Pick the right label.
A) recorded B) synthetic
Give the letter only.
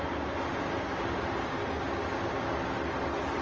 A